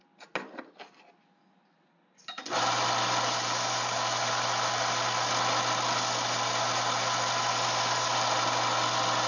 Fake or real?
real